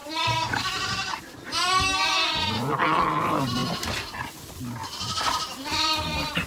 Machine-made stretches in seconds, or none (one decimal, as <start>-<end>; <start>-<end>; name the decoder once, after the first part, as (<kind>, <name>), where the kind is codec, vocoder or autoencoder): 0.0-1.2 (vocoder, BigVGAN v2); 4.8-6.5